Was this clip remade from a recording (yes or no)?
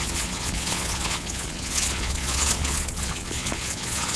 yes